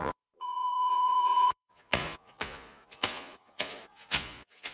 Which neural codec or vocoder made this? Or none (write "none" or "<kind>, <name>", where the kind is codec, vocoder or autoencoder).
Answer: vocoder, Vocos